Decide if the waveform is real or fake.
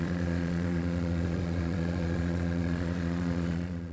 fake